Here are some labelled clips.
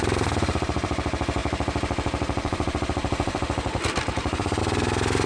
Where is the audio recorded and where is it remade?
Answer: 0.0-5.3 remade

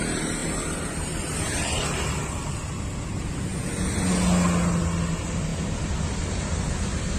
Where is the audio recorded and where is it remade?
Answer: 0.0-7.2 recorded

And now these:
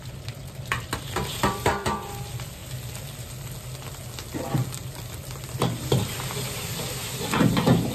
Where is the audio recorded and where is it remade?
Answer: 0.0-2.6 remade; 2.6-5.4 recorded; 5.4-7.0 remade; 7.0-7.9 recorded

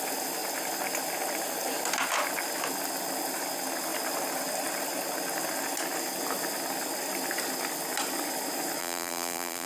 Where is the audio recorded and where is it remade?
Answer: 0.0-8.8 recorded; 8.8-9.7 remade